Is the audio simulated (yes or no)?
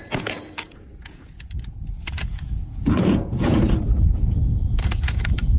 yes